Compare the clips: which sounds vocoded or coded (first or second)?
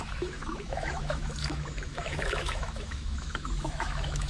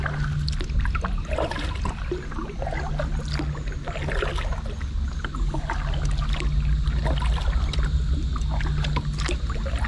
first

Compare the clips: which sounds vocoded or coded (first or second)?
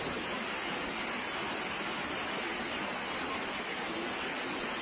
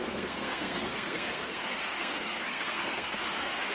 second